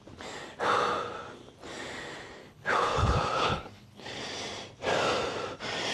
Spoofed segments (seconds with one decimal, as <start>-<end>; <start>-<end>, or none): 2.4-4.2